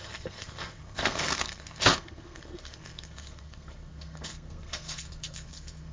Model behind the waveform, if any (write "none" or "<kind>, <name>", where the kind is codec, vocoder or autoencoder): codec, SNAC